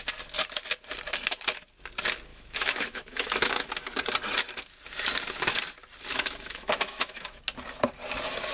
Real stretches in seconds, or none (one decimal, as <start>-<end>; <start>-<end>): 0.0-2.3; 3.7-6.1; 7.4-8.5